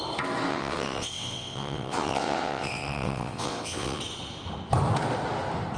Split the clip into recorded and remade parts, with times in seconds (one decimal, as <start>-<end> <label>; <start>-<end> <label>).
0.0-0.5 recorded; 0.5-4.0 remade; 4.0-5.8 recorded